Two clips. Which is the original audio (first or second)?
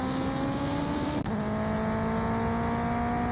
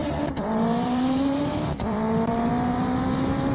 first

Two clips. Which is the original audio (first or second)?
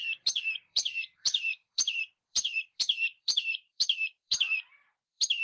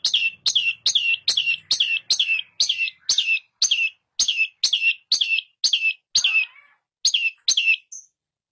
second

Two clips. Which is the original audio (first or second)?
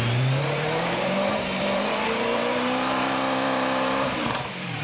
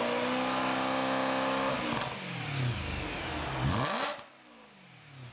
second